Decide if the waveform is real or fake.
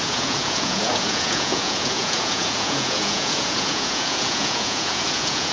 fake